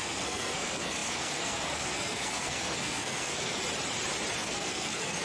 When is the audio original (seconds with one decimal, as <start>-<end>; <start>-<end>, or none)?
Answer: 3.6-4.4